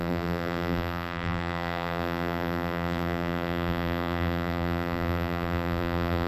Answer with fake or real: fake